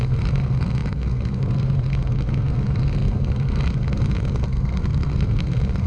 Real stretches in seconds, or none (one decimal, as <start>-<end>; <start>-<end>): none